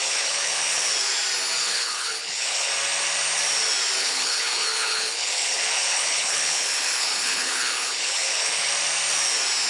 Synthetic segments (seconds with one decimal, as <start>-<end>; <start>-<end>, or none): 0.0-0.9; 1.6-2.7; 4.0-8.7